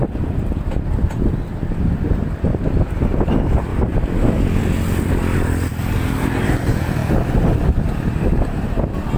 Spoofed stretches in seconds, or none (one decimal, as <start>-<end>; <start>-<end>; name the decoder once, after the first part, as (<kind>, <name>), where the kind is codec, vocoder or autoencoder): 3.7-4.3 (vocoder, BigVGAN v2)